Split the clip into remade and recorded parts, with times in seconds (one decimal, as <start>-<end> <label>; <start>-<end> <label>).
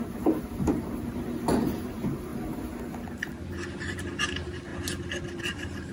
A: 0.0-2.3 remade; 2.3-3.8 recorded; 3.8-4.7 remade; 4.7-5.4 recorded; 5.4-5.9 remade